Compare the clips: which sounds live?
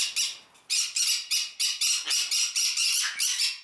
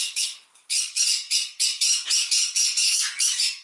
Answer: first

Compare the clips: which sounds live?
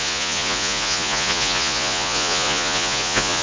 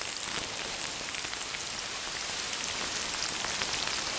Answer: second